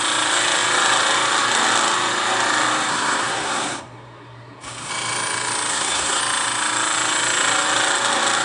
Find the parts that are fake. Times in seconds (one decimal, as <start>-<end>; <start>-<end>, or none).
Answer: 2.9-4.9; 5.7-6.2